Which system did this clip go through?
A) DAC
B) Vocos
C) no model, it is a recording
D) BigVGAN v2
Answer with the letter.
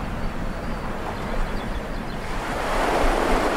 D